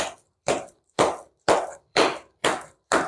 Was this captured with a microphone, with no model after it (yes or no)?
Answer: no